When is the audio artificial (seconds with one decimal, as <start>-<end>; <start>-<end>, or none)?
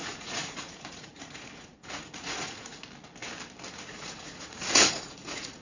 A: 0.0-2.8; 3.7-5.6